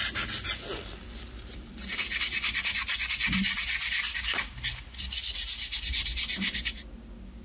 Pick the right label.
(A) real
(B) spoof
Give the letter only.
A